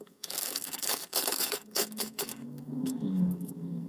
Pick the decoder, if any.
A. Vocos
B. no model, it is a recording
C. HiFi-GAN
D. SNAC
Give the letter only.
D